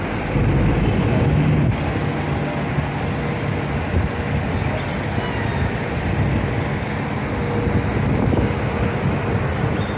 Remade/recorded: recorded